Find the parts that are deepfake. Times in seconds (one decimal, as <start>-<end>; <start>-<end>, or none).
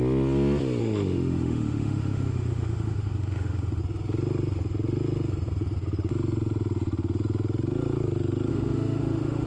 0.8-3.8; 8.5-9.5